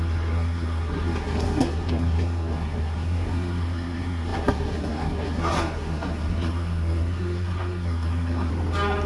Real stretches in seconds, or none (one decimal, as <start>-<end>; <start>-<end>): 8.5-9.1